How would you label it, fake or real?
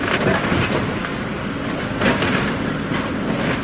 real